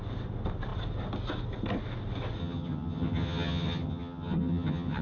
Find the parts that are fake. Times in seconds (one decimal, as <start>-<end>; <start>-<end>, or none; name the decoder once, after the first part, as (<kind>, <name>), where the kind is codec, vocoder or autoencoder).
2.4-5.0 (vocoder, HiFi-GAN)